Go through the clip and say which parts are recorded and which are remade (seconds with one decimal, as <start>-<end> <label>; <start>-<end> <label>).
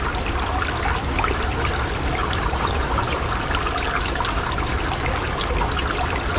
0.0-2.2 recorded; 2.2-3.2 remade; 3.2-6.4 recorded